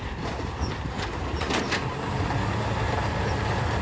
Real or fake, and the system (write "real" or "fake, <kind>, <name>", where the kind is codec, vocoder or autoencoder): fake, vocoder, BigVGAN v2